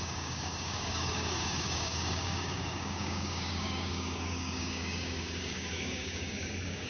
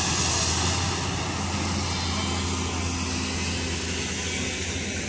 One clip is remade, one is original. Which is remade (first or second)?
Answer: first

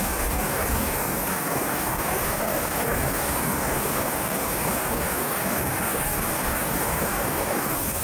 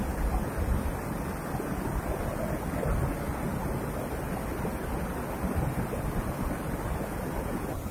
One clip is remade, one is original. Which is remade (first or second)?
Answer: first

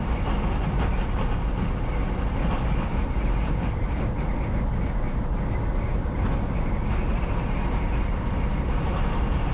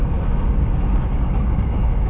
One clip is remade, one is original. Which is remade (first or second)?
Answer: second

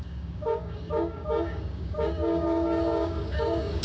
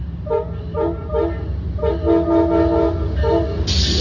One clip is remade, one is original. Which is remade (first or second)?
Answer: first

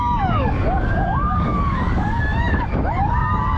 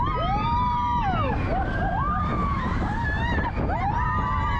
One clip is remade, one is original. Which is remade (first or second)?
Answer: first